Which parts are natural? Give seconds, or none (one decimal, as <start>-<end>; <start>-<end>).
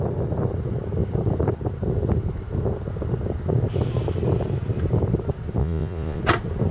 0.0-5.6; 6.2-6.7